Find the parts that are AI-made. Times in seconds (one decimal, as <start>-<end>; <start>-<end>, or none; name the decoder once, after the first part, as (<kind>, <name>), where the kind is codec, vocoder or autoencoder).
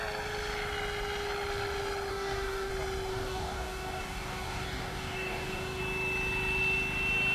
2.1-2.7 (codec, DAC); 3.1-5.8